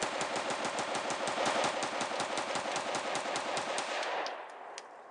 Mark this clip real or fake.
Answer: real